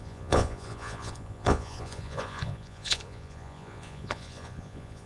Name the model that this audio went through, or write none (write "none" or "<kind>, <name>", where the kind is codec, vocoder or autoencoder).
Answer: vocoder, Vocos